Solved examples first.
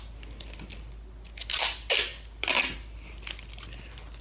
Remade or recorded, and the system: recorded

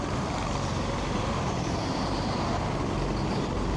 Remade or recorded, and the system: remade, vocoder, BigVGAN v2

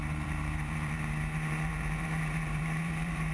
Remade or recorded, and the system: remade, vocoder, BigVGAN v2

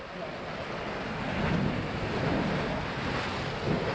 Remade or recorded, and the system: recorded